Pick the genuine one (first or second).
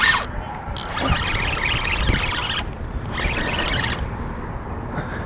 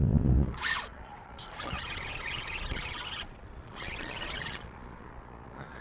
first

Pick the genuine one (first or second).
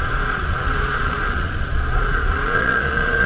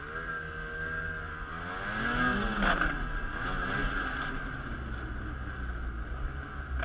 second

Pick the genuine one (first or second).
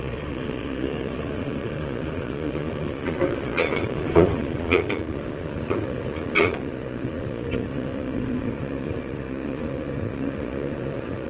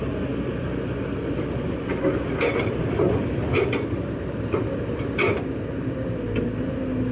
second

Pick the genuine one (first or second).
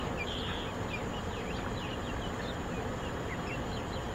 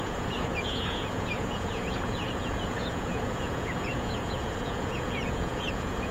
first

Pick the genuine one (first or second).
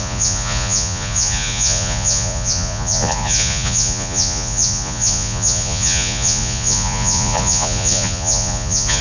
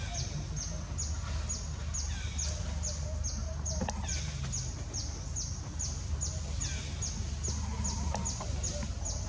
second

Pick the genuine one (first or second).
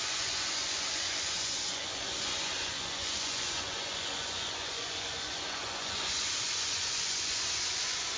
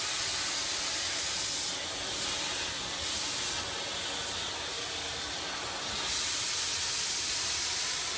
second